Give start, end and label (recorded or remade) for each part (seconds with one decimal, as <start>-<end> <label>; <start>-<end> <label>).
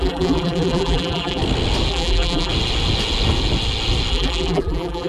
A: 0.0-1.4 remade; 1.4-1.9 recorded; 1.9-2.5 remade; 2.5-4.1 recorded; 4.1-5.1 remade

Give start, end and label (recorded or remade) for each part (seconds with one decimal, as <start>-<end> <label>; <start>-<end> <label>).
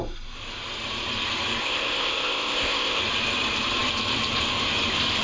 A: 0.0-1.6 recorded; 1.6-3.0 remade; 3.0-5.2 recorded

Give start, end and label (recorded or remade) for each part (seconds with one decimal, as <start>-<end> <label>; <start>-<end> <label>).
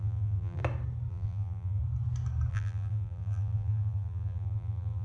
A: 0.0-0.6 remade; 0.6-1.1 recorded; 1.1-1.8 remade; 1.8-2.5 recorded; 2.5-5.0 remade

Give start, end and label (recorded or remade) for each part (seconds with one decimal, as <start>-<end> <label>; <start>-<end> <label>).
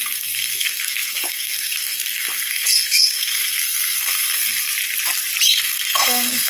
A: 0.0-4.7 remade; 4.7-5.5 recorded; 5.5-6.5 remade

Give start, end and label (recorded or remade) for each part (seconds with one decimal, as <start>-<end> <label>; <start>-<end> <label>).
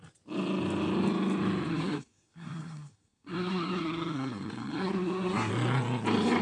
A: 0.0-1.7 recorded; 1.7-5.5 remade; 5.5-6.4 recorded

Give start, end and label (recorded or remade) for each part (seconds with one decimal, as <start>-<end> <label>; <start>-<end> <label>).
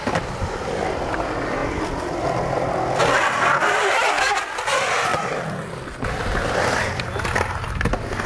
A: 0.0-8.3 recorded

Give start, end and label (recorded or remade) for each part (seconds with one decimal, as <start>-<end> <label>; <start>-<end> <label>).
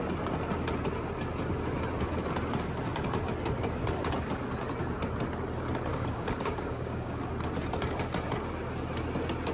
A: 0.0-5.9 recorded; 5.9-7.2 remade; 7.2-9.5 recorded